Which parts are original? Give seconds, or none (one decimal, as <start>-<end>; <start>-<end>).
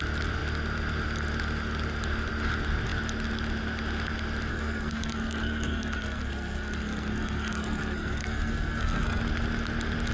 0.0-4.5; 9.2-10.1